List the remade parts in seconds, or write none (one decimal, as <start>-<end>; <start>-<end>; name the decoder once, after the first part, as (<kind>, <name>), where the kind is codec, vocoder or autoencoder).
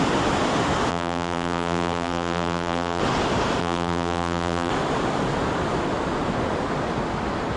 0.9-3.0 (vocoder, BigVGAN v2); 3.6-4.7